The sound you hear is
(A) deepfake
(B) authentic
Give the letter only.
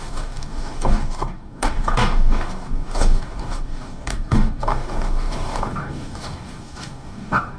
A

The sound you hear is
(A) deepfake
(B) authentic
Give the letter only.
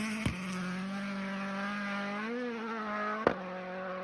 B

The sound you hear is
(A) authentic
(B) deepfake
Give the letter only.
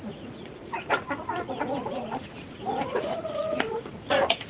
B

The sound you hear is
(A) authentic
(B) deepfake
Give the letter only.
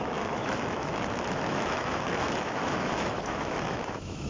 B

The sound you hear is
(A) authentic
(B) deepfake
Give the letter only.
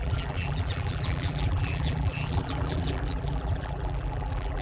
B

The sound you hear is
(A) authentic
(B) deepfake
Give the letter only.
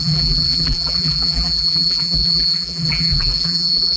B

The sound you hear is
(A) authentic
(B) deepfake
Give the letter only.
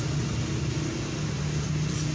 A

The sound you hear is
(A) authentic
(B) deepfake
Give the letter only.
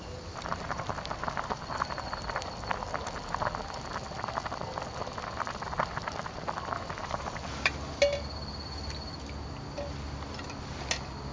A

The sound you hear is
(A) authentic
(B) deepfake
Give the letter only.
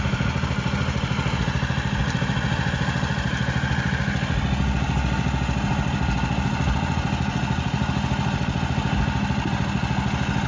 A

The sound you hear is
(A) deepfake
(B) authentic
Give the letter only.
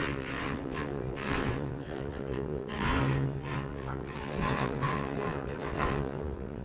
A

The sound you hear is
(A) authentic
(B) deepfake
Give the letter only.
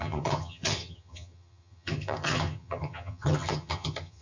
B